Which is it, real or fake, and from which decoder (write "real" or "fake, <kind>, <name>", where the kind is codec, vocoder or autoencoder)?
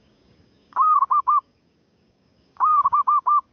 fake, codec, DAC